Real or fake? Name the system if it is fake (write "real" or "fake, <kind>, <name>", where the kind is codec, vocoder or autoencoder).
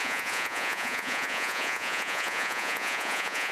fake, vocoder, Vocos